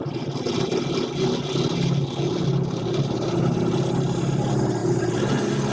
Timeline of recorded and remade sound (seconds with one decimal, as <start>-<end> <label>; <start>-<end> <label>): 0.0-4.8 recorded; 4.8-5.3 remade; 5.3-5.7 recorded